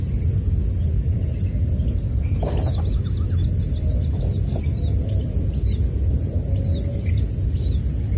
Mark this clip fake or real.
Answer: real